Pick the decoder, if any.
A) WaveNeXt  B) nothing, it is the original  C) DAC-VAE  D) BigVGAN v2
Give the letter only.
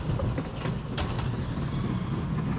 B